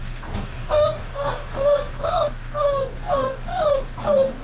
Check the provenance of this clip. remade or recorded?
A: remade